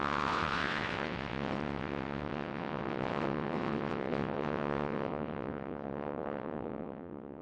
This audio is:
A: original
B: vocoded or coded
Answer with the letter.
B